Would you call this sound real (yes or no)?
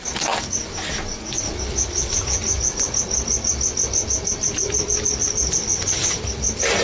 yes